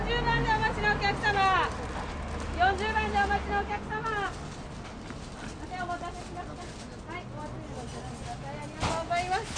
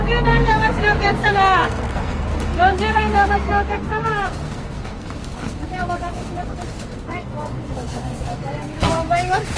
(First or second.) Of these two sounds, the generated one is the second